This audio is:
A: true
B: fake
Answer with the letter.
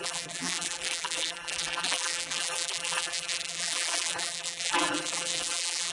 B